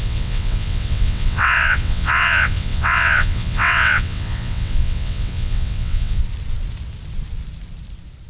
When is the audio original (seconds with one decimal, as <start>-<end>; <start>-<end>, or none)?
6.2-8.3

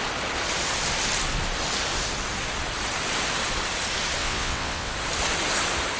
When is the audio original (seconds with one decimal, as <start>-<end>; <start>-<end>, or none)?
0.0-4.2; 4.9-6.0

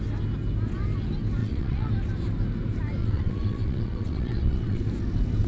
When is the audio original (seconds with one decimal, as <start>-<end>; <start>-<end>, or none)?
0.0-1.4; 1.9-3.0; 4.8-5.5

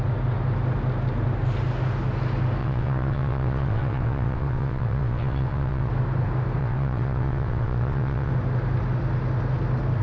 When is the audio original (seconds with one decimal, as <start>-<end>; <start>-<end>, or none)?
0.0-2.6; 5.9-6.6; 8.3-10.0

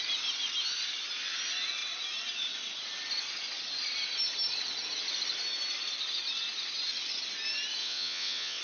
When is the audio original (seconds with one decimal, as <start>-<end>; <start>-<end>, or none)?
0.0-7.8